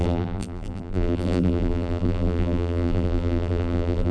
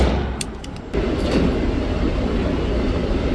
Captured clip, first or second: second